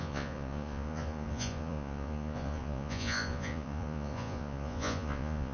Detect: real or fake fake